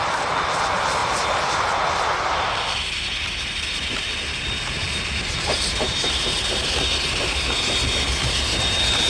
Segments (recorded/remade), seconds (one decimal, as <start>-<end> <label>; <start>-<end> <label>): 0.0-9.1 recorded